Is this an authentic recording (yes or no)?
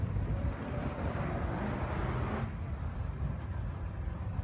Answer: yes